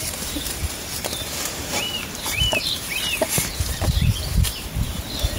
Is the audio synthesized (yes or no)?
yes